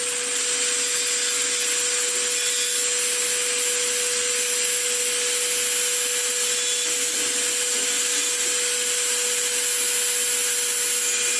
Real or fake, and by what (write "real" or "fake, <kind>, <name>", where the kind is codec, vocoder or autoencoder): real